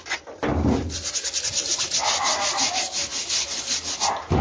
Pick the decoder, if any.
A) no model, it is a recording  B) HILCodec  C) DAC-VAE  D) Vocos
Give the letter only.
A